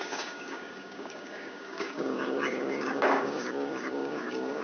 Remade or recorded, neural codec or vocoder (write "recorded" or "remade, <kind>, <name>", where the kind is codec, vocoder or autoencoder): remade, codec, DAC